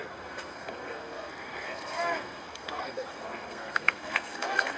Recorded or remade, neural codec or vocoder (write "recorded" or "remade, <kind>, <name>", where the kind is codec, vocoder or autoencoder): remade, codec, SNAC